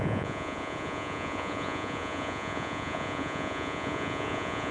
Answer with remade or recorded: remade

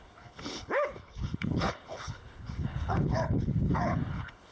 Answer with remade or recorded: remade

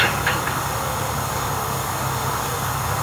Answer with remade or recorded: remade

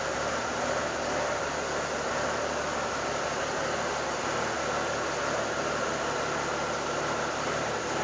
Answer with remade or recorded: recorded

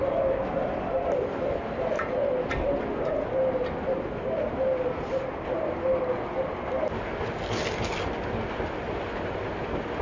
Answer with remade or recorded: recorded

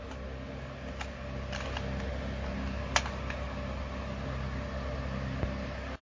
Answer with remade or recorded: recorded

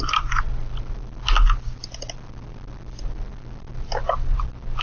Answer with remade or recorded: recorded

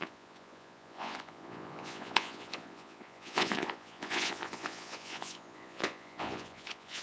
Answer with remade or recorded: remade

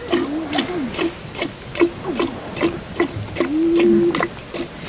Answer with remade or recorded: recorded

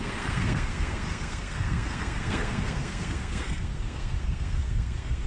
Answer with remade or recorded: remade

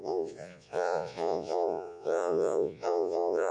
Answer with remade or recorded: remade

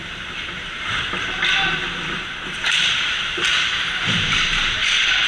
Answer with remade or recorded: remade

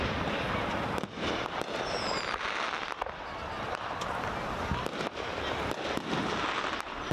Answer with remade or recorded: recorded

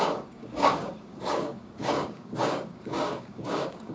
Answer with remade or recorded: remade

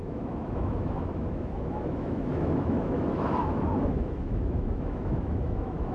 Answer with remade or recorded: remade